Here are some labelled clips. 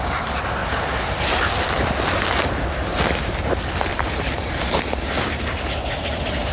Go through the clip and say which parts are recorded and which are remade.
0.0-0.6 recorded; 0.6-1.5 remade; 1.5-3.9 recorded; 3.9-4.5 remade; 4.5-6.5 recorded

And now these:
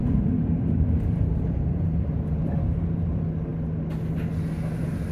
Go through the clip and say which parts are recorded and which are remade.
0.0-3.1 remade; 3.1-5.1 recorded

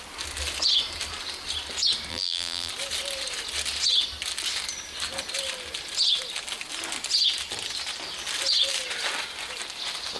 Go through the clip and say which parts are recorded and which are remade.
0.0-2.1 recorded; 2.1-2.7 remade; 2.7-10.2 recorded

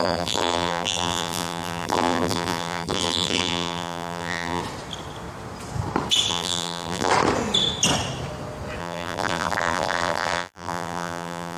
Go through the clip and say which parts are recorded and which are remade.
0.0-4.6 remade; 4.6-6.3 recorded; 6.3-7.1 remade; 7.1-8.8 recorded; 8.8-11.6 remade

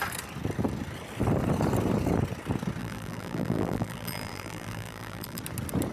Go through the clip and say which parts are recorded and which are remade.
0.0-2.8 recorded; 2.8-5.4 remade; 5.4-5.9 recorded

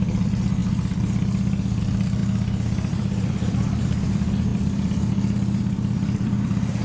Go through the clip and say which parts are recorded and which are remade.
0.0-0.6 remade; 0.6-1.8 recorded; 1.8-2.2 remade; 2.2-2.9 recorded; 2.9-6.8 remade

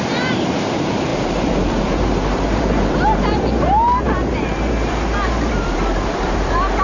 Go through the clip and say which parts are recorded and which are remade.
0.0-6.8 remade

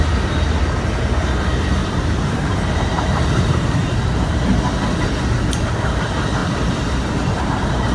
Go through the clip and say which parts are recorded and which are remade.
0.0-1.8 recorded; 1.8-4.0 remade; 4.0-6.4 recorded; 6.4-7.1 remade; 7.1-7.9 recorded